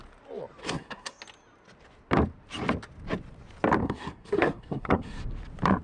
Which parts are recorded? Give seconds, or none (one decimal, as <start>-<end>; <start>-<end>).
0.0-0.6; 1.2-3.8; 5.2-5.8